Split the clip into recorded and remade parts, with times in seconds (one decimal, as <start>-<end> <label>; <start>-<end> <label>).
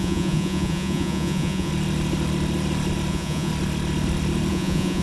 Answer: 0.0-1.7 remade; 1.7-3.1 recorded; 3.1-3.5 remade; 3.5-4.5 recorded; 4.5-5.0 remade